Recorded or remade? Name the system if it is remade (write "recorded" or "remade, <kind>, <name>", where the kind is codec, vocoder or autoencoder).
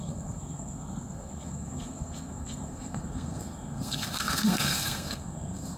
remade, codec, SNAC